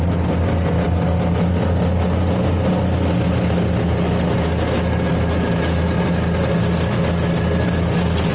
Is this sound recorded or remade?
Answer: recorded